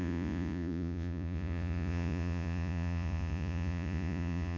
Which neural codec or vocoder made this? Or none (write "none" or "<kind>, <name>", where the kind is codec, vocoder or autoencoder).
vocoder, Vocos